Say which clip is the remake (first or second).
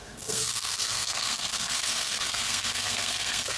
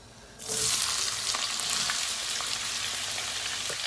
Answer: first